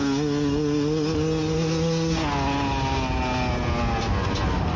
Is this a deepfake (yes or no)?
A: no